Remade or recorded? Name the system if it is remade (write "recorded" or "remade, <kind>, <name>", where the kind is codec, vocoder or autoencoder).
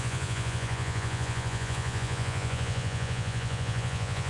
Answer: remade, vocoder, Vocos